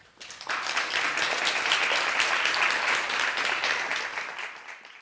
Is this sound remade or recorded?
recorded